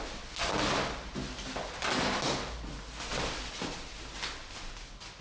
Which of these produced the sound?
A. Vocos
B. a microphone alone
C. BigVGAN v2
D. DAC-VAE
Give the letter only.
B